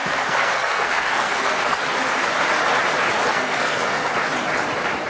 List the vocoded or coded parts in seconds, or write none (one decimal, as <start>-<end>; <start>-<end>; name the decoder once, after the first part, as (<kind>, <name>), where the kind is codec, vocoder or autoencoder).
0.0-1.8 (codec, SNAC); 3.3-4.1

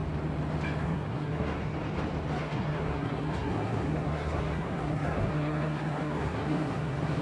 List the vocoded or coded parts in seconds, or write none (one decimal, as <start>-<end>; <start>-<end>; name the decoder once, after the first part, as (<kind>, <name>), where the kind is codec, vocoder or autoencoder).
0.8-1.7 (codec, SNAC); 2.4-7.2

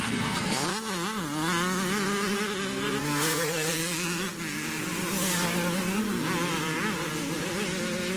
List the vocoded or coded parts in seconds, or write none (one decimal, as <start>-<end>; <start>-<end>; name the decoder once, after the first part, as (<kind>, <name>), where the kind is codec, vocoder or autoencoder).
0.0-0.7 (codec, SNAC); 3.0-3.8

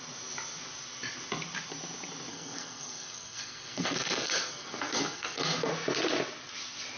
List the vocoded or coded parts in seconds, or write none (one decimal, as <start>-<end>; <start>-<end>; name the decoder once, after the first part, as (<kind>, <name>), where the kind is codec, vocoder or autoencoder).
2.3-5.7 (codec, SNAC)

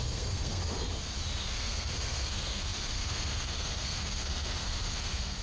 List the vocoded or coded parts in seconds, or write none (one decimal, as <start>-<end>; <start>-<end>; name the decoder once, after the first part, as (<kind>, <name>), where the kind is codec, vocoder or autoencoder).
0.0-0.6 (codec, SNAC); 1.4-5.4